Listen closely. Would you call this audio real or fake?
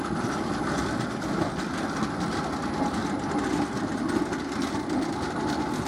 real